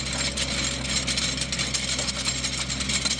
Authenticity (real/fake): real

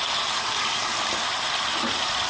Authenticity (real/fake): real